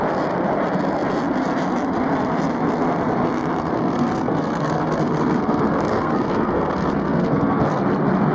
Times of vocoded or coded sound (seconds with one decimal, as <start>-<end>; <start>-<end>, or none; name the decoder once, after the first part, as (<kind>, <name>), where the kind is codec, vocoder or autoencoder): 3.7-7.8 (codec, SNAC)